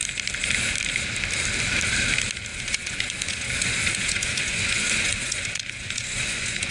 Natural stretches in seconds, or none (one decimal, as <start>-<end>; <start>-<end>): 0.0-2.5